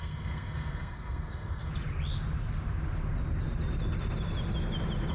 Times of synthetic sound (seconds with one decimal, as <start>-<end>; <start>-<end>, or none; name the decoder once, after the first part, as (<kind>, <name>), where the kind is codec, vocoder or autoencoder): 0.0-1.7 (codec, SNAC)